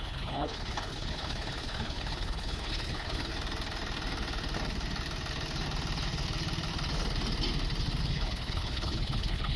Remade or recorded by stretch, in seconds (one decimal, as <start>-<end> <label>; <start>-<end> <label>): 0.0-3.3 remade; 3.3-8.0 recorded; 8.0-9.6 remade